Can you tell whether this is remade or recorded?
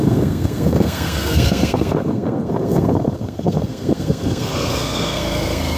remade